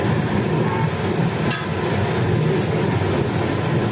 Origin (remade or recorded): recorded